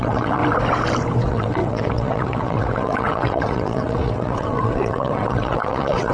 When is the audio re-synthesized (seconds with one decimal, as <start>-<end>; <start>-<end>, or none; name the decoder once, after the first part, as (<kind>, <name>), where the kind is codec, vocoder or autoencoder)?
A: 0.0-0.4 (vocoder, WaveNeXt); 1.2-6.1